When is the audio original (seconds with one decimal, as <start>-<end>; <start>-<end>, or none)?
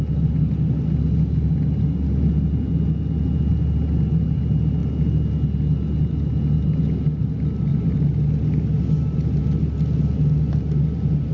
0.0-11.3